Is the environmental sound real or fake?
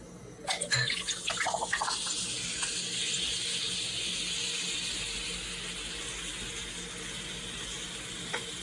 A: real